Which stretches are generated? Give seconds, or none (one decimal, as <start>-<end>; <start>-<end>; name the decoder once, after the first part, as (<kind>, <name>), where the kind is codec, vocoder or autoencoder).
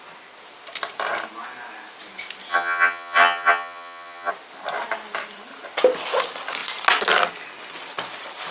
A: 2.5-4.3 (vocoder, HiFi-GAN)